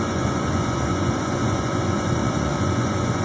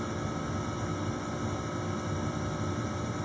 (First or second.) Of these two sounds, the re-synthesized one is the first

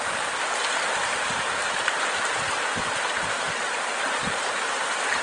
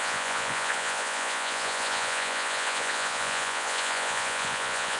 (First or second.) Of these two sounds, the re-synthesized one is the second